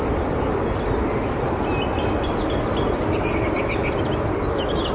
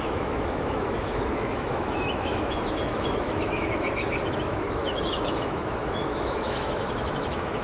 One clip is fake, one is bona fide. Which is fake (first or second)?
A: second